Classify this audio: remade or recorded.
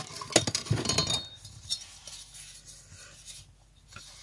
recorded